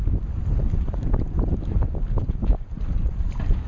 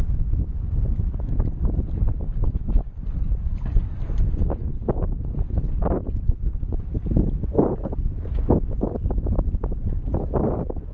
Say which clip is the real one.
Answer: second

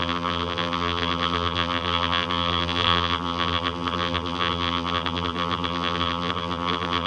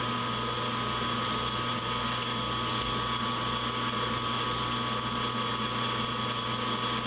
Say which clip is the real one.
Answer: second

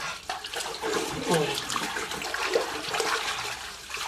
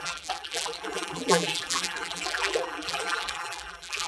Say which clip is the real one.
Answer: first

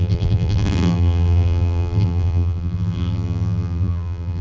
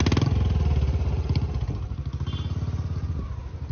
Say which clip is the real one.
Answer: second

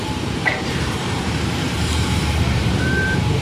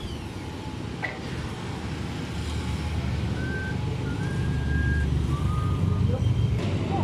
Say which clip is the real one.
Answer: second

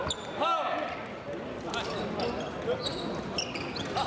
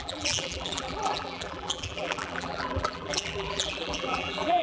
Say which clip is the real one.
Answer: first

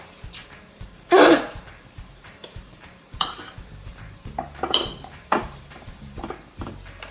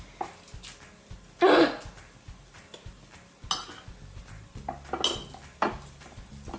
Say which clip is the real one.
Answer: second